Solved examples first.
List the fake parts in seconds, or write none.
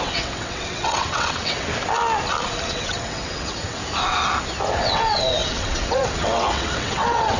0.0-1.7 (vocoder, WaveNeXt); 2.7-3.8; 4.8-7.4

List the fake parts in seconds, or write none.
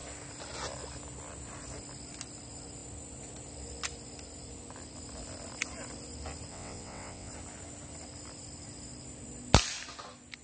6.5-7.3 (vocoder, WaveNeXt)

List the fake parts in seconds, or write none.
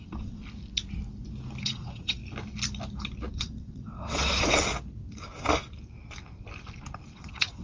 0.0-0.4 (vocoder, WaveNeXt); 1.6-2.2; 3.3-4.7; 7.1-7.6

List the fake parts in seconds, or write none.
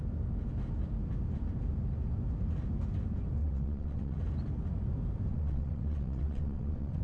3.4-4.2 (vocoder, WaveNeXt); 5.3-7.0